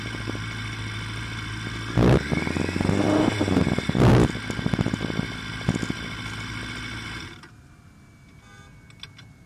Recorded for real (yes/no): yes